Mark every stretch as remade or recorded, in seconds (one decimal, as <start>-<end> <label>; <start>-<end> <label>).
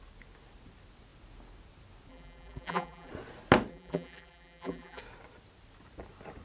0.0-2.1 recorded; 2.1-3.1 remade; 3.1-3.7 recorded; 3.7-5.0 remade; 5.0-6.4 recorded